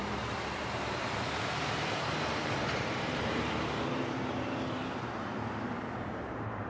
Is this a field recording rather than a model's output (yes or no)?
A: no